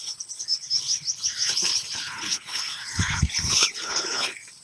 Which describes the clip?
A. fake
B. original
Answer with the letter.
A